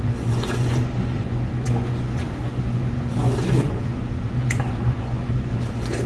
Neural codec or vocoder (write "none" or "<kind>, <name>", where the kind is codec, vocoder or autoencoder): vocoder, Vocos